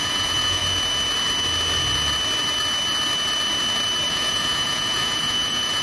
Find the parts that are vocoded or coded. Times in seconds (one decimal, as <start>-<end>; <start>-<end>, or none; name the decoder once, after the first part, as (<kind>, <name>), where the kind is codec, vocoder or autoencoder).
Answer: 0.0-0.6 (vocoder, Vocos); 4.1-5.8